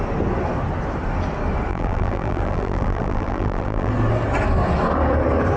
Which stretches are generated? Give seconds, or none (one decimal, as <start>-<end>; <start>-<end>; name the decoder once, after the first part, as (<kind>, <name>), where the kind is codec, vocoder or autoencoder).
1.7-3.9 (vocoder, BigVGAN v2)